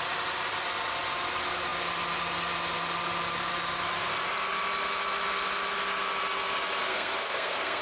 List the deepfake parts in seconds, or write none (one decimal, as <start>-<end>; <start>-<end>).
6.9-7.8